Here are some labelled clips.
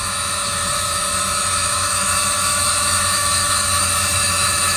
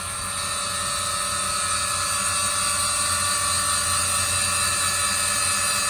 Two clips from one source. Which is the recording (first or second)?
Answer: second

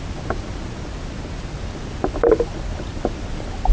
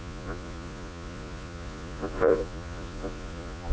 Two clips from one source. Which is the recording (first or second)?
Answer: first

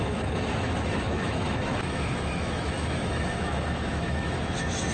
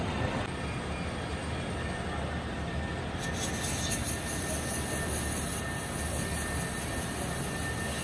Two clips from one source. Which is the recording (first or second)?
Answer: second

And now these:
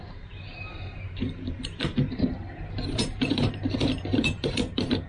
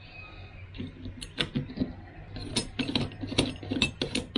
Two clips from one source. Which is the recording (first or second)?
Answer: second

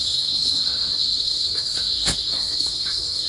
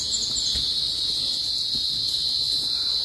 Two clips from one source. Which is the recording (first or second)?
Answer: second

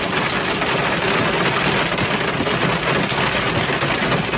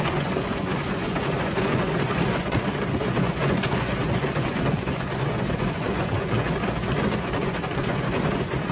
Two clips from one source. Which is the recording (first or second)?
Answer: first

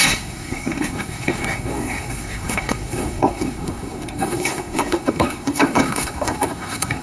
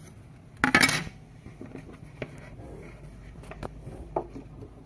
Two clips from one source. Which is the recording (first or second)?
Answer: second